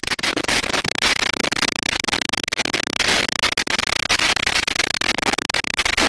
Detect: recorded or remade recorded